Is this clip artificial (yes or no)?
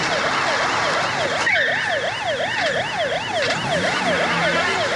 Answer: no